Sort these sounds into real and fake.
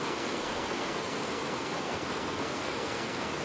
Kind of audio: fake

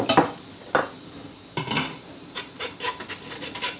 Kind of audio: real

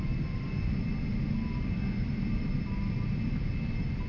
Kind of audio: real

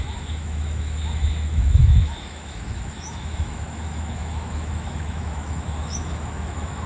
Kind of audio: fake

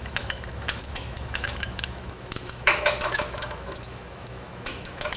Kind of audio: fake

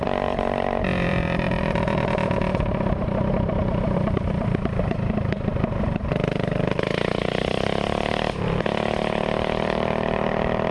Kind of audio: fake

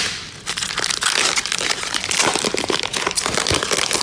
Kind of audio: real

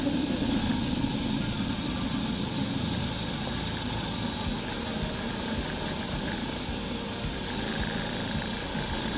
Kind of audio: real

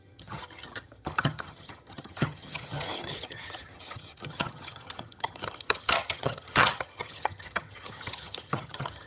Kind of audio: fake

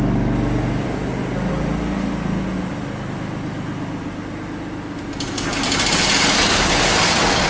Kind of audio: real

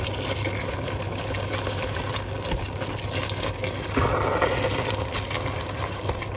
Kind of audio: real